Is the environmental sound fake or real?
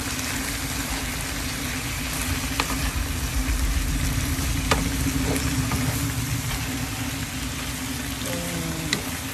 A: real